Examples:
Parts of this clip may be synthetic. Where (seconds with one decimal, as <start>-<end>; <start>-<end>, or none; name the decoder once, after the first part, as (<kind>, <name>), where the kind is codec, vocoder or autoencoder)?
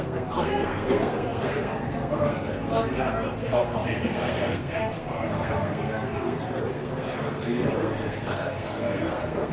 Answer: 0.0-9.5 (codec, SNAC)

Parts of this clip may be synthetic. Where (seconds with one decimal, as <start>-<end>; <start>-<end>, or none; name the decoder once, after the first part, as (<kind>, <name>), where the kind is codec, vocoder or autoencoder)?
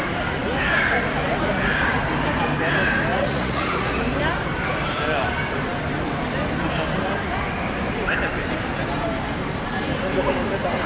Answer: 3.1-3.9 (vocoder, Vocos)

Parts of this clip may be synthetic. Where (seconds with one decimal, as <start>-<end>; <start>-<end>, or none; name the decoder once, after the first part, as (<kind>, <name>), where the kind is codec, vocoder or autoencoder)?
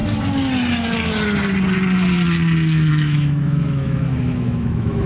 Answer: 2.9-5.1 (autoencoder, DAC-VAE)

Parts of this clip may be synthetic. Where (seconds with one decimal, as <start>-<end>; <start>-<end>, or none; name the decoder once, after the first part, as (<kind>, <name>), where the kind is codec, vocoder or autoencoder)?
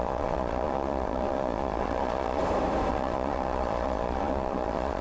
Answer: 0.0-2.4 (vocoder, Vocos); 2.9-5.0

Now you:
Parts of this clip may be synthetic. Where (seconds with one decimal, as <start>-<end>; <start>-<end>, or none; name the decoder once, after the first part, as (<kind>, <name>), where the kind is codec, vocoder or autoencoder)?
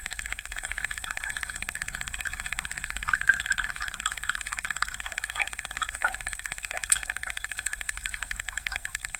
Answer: 0.0-9.2 (codec, SNAC)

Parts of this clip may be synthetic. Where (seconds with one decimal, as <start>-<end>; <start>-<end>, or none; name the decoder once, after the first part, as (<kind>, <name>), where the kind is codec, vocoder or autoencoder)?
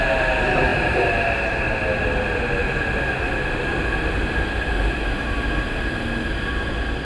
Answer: none